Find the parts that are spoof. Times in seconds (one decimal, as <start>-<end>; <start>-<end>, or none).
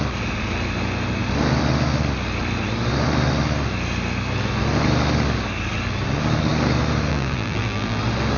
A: 7.1-8.0